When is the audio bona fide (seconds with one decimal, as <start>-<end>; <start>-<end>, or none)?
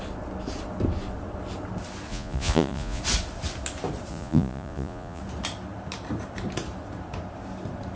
0.0-2.1; 3.0-4.1; 5.2-8.0